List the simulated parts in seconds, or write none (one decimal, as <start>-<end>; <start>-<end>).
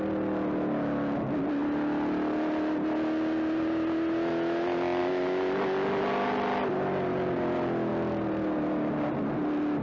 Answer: none